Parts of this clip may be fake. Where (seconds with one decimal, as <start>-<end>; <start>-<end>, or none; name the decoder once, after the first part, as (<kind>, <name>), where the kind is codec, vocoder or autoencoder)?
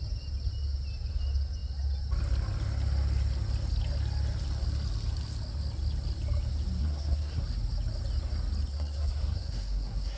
6.8-7.4 (codec, SNAC); 8.7-10.2